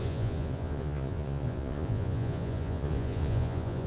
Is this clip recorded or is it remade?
remade